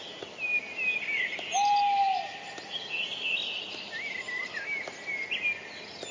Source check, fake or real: real